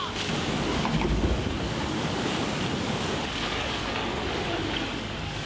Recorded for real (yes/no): no